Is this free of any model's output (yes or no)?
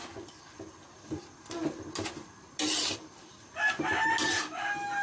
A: yes